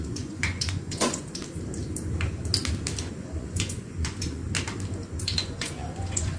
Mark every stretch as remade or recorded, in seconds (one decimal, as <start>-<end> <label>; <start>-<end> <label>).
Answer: 0.0-1.4 remade; 1.4-3.0 recorded; 3.0-4.4 remade; 4.4-5.2 recorded; 5.2-6.4 remade